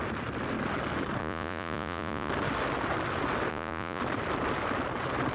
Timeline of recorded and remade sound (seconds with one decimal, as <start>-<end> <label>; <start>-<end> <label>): 0.0-1.2 recorded; 1.2-2.3 remade; 2.3-3.5 recorded; 3.5-4.0 remade; 4.0-5.3 recorded